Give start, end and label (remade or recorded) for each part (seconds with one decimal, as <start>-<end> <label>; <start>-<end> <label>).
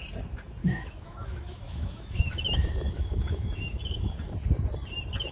0.0-0.6 recorded; 0.6-3.8 remade; 3.8-5.3 recorded